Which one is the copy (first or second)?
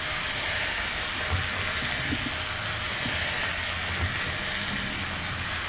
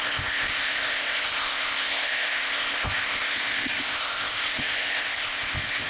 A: second